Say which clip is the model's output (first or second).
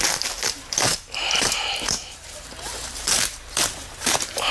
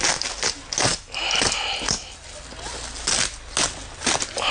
first